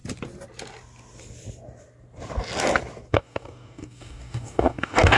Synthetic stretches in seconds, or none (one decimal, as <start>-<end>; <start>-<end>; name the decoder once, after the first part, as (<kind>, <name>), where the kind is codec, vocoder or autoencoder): 3.1-5.2 (codec, DAC)